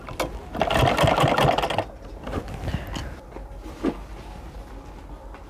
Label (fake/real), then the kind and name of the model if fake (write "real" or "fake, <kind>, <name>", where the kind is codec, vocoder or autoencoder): real